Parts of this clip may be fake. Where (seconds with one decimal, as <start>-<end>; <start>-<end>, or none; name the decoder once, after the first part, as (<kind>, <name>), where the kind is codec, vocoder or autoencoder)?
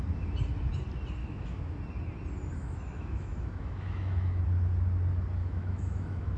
1.2-1.8 (autoencoder, DAC-VAE); 2.6-4.4; 5.4-6.4